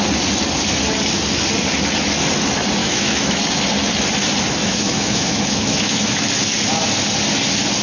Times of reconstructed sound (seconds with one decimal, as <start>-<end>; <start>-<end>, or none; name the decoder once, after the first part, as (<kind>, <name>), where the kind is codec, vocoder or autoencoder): 2.8-3.4 (autoencoder, DAC-VAE); 4.6-6.3